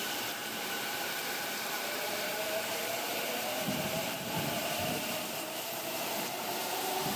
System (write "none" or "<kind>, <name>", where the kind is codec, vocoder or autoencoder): vocoder, BigVGAN v2